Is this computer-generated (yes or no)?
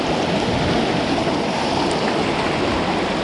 no